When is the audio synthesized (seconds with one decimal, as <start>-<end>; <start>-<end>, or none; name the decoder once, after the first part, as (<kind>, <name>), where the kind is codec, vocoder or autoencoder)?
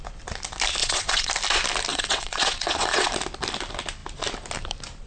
0.8-1.3 (vocoder, WaveNeXt); 1.9-3.1